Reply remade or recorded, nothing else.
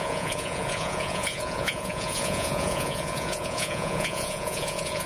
remade